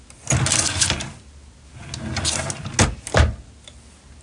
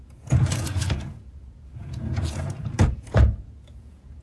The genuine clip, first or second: first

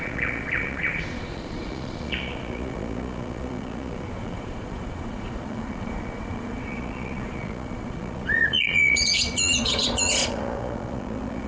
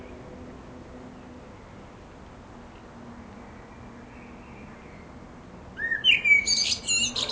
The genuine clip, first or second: second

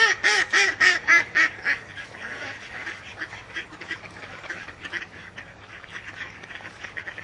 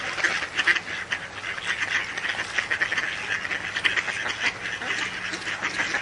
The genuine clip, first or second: second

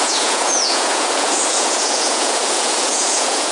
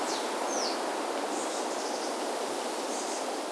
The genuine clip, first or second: second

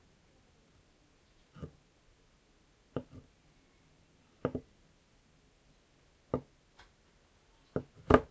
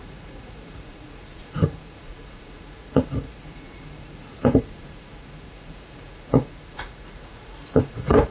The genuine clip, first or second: first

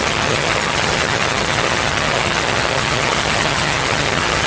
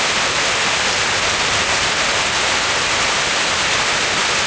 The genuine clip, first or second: second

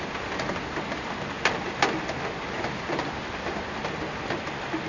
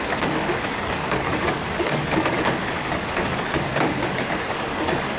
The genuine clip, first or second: first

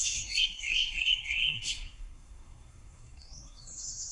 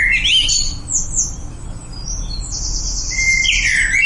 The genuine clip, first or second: second